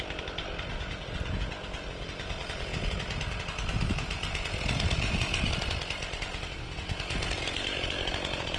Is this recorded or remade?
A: recorded